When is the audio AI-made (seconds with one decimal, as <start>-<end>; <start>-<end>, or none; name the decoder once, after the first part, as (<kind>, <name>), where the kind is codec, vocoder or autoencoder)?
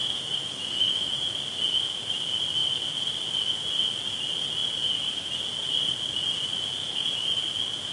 0.0-1.3 (autoencoder, DAC-VAE); 6.8-7.4